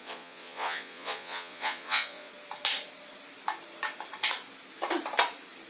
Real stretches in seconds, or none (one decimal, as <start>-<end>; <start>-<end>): 2.3-5.7